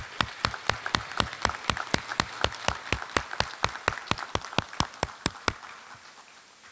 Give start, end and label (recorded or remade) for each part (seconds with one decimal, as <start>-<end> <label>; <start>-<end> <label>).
0.0-6.7 recorded